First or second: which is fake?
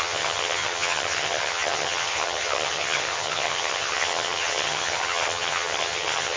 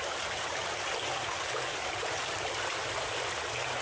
first